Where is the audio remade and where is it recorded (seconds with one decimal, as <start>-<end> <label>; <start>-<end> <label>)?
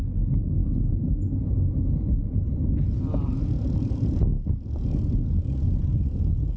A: 0.0-6.6 recorded